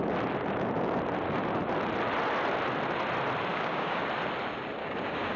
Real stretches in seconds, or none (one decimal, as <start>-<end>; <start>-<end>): 0.0-3.5; 4.0-4.8